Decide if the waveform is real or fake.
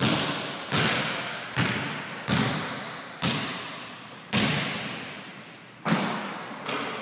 real